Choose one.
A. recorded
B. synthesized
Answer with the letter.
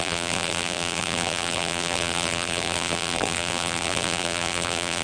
B